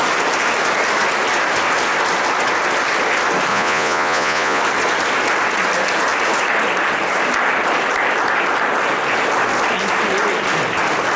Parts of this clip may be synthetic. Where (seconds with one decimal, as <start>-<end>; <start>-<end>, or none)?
3.5-4.6